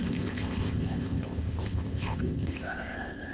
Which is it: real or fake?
fake